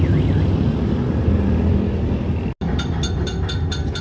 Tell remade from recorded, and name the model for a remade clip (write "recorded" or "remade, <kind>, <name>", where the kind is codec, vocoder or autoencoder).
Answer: recorded